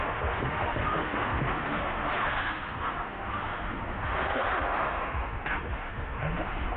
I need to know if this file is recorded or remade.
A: remade